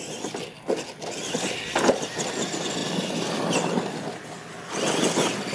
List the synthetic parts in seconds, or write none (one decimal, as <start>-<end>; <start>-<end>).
none